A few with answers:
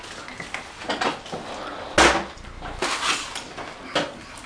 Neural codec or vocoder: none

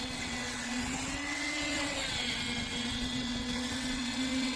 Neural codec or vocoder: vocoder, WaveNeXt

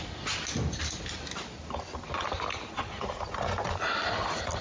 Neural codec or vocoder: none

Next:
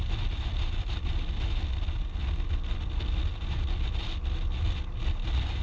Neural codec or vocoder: none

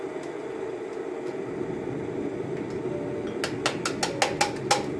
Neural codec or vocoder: none